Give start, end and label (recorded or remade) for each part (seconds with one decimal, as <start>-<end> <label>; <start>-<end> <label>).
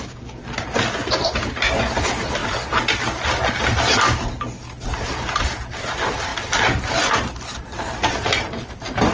0.0-9.1 recorded